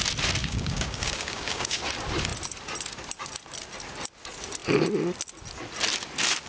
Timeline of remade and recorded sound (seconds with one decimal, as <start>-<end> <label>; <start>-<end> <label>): 0.0-0.4 recorded; 0.4-1.8 remade; 1.8-6.5 recorded